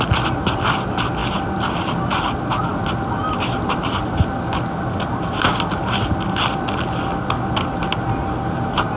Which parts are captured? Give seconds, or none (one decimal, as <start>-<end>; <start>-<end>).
0.0-9.0

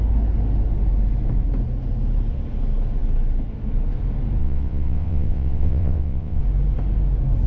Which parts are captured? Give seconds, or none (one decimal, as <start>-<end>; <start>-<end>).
0.0-4.4; 6.4-7.5